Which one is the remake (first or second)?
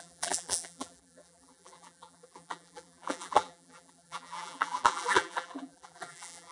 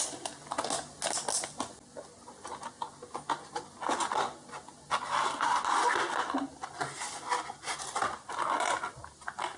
first